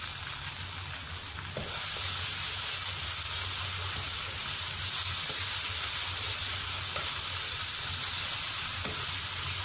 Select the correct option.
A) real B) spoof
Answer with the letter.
A